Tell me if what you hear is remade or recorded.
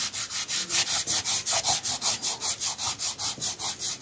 recorded